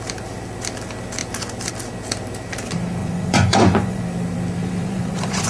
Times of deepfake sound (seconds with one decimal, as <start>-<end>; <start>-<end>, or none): 3.0-4.0; 4.6-5.5